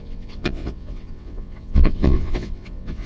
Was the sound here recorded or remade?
remade